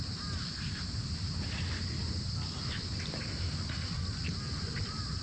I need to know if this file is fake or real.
real